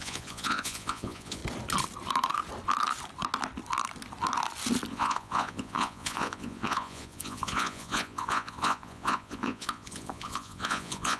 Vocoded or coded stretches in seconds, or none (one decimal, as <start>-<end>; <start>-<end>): 0.0-1.4; 4.9-11.2